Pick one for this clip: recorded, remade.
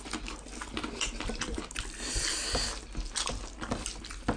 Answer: recorded